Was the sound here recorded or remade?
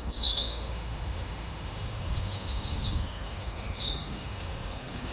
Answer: remade